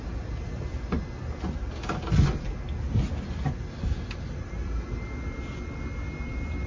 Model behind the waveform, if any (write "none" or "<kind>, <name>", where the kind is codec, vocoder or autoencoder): none